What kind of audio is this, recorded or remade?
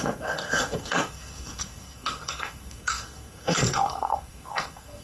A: remade